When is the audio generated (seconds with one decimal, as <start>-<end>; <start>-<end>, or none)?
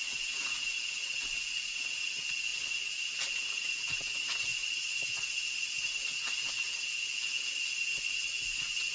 none